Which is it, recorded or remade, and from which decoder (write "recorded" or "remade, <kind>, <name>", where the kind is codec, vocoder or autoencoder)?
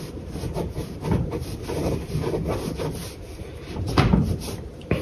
remade, vocoder, BigVGAN v2